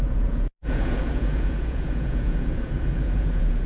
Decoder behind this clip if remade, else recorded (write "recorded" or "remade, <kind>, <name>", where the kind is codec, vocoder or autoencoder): remade, vocoder, Vocos